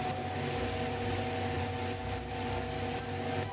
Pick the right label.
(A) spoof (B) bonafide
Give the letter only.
B